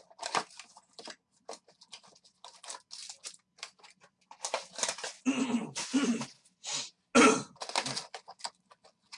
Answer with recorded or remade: recorded